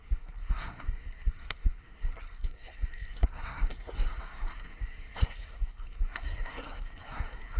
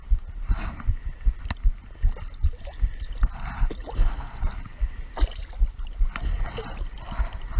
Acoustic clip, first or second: second